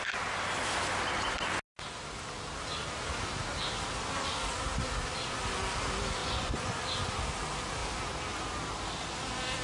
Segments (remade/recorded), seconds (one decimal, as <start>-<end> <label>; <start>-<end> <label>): 0.0-6.2 recorded; 6.2-6.8 remade; 6.8-9.6 recorded